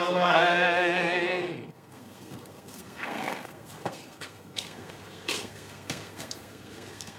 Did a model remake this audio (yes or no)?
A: yes